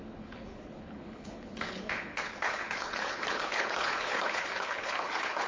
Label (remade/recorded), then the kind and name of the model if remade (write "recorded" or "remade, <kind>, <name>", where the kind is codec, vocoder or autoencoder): remade, codec, HILCodec